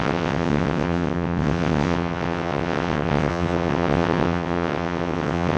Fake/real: fake